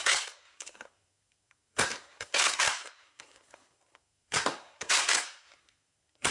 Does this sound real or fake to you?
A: fake